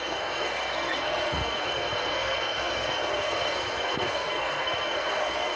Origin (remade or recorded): remade